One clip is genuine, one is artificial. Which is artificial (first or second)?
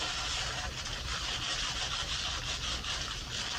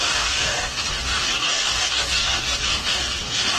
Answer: second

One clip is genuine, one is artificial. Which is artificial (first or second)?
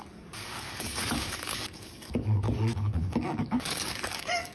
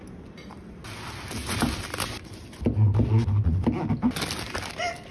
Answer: first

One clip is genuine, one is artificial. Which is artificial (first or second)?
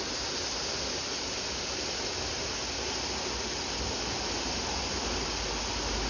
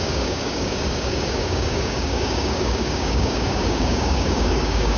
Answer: second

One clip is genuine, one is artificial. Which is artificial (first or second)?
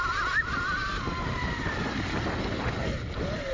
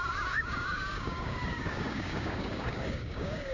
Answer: second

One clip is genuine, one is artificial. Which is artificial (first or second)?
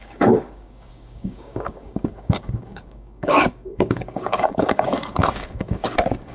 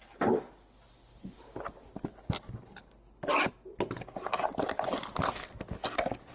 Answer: first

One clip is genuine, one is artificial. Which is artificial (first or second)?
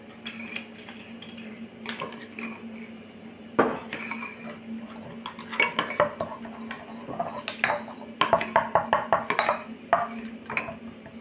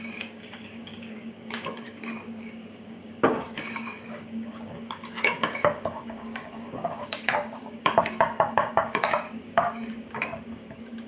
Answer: second